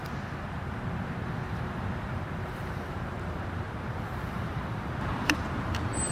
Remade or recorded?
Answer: remade